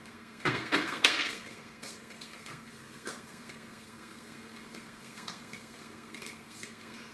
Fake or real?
fake